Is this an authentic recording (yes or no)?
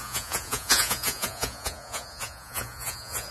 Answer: no